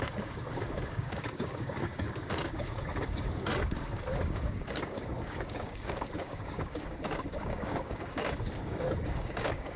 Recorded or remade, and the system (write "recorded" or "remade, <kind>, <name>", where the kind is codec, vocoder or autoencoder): remade, codec, DAC